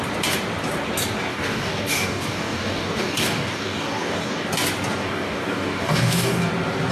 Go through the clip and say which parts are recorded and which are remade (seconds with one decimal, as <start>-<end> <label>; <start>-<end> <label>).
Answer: 0.0-1.3 recorded; 1.3-4.5 remade; 4.5-5.0 recorded; 5.0-6.5 remade; 6.5-6.9 recorded